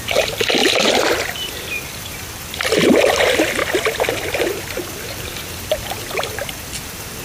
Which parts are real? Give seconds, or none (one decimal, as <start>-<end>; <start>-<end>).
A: 3.6-4.1